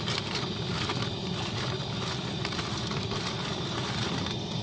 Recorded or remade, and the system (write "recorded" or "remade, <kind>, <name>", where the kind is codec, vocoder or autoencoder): recorded